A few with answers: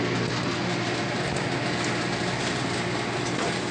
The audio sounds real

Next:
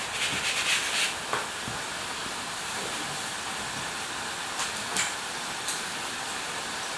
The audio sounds real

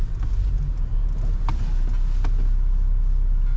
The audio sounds real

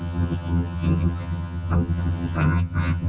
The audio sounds fake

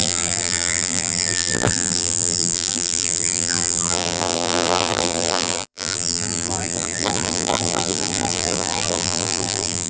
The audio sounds fake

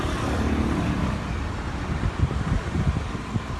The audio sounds fake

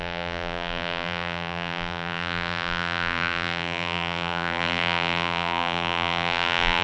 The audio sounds fake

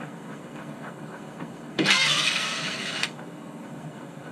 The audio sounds fake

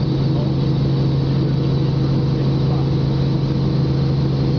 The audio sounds real